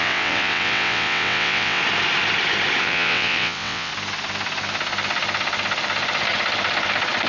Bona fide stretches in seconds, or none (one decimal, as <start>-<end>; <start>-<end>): 1.8-2.8; 3.9-7.3